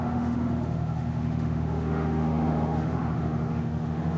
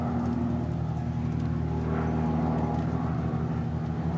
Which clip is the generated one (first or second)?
first